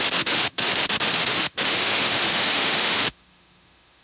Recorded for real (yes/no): no